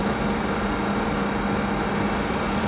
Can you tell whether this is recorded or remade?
recorded